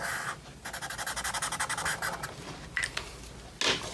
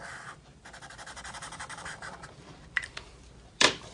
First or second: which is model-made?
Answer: second